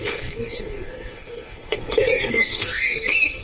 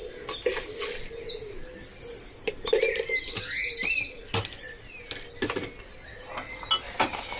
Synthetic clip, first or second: first